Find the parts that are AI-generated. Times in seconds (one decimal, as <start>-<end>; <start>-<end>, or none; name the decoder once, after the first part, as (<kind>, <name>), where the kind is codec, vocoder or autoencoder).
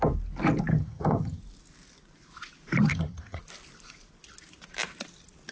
0.7-1.4 (vocoder, HiFi-GAN); 2.9-3.4